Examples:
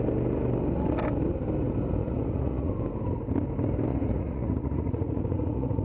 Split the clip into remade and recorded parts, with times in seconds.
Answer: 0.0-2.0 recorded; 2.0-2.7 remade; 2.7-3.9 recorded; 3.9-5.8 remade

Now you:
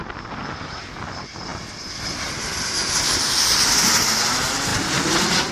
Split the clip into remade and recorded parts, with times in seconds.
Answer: 0.0-5.5 recorded

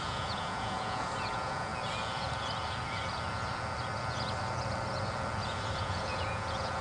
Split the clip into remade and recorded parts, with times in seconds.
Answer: 0.0-1.7 remade; 1.7-5.8 recorded; 5.8-6.8 remade

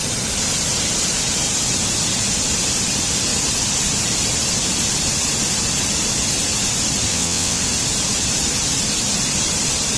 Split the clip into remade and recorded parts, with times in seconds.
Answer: 0.0-7.1 recorded; 7.1-7.6 remade; 7.6-10.0 recorded

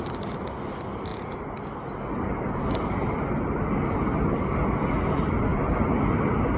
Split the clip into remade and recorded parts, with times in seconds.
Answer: 0.0-6.6 recorded

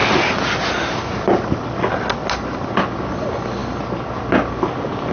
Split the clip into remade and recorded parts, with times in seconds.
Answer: 0.0-5.1 recorded

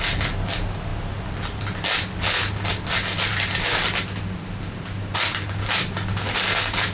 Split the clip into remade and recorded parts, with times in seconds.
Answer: 0.0-6.9 recorded

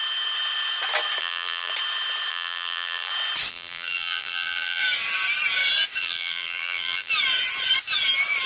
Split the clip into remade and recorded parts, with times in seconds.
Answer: 0.0-1.2 recorded; 1.2-1.7 remade; 1.7-2.3 recorded; 2.3-3.1 remade; 3.1-3.5 recorded; 3.5-4.8 remade; 4.8-6.0 recorded; 6.0-7.1 remade; 7.1-8.5 recorded